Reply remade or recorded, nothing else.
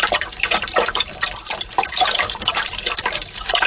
remade